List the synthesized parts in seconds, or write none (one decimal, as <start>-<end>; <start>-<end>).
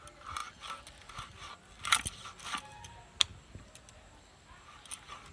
none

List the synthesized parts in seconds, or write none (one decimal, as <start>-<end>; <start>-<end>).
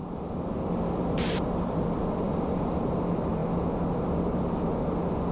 0.0-2.8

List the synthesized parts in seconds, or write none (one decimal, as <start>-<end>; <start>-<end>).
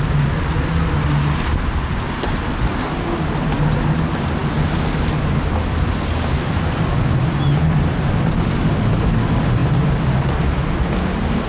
none